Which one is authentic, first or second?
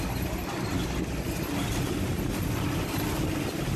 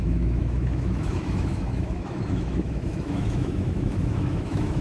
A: first